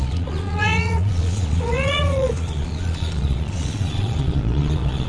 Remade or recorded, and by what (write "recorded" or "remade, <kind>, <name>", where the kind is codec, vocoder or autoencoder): remade, vocoder, Vocos